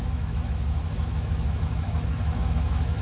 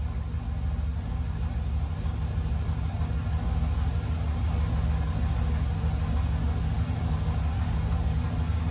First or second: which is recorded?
second